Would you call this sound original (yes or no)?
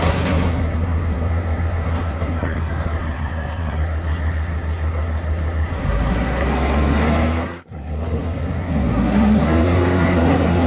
no